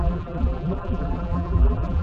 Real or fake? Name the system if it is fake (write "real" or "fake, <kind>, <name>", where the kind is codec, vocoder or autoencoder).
fake, vocoder, BigVGAN v2